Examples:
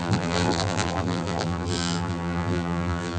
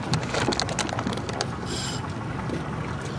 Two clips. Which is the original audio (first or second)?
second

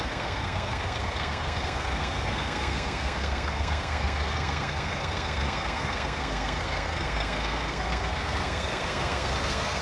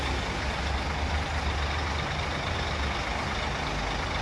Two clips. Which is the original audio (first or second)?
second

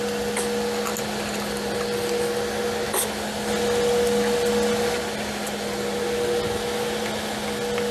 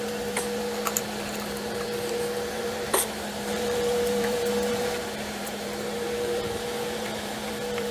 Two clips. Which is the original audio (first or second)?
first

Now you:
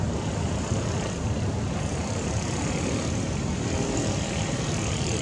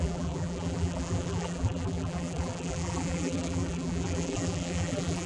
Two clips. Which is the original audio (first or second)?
first